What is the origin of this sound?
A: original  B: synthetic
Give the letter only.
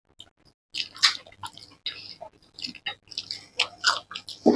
A